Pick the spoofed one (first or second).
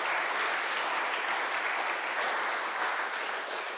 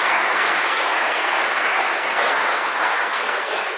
second